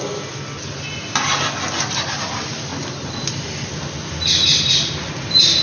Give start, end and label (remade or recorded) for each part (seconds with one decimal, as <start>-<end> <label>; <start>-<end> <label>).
0.0-5.6 recorded